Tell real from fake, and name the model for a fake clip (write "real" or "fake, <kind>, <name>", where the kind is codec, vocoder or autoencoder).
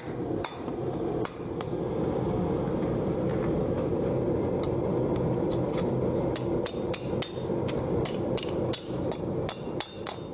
real